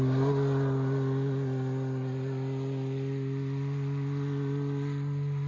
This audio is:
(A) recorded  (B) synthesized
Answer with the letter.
A